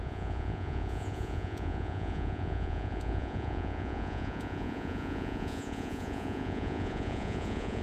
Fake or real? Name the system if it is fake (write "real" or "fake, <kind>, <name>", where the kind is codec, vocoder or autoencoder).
fake, vocoder, Vocos